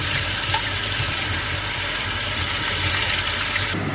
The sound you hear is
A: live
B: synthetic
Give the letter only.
B